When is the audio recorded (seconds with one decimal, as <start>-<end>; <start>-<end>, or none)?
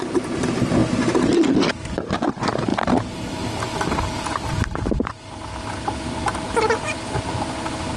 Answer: 0.8-1.8; 2.7-6.8